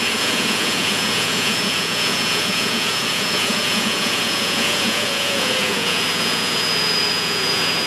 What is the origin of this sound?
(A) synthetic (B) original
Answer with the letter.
A